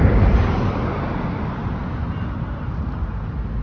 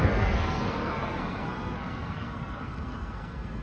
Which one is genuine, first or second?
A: first